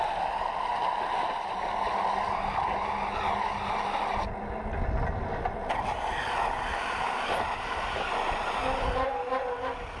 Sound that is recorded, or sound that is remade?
recorded